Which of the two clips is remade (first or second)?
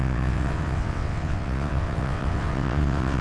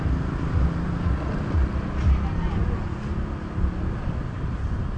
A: first